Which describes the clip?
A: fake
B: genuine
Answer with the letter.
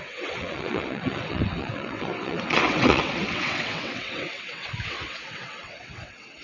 A